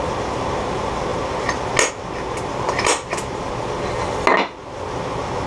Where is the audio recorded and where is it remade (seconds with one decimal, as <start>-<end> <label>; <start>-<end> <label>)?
0.0-2.5 recorded; 2.5-3.5 remade; 3.5-5.5 recorded